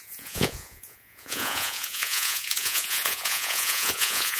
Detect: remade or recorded remade